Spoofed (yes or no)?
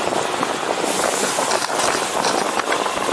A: no